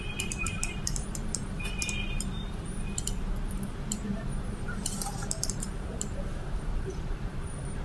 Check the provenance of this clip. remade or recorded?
remade